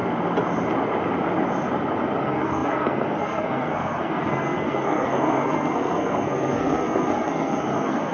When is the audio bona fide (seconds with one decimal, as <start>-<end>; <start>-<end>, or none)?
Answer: 0.0-2.2